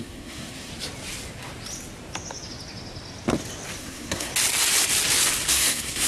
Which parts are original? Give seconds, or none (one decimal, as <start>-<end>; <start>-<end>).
0.7-3.8; 4.3-5.5